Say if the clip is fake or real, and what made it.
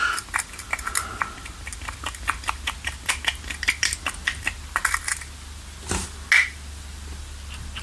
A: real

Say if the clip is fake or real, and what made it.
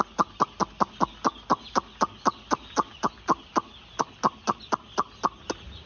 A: real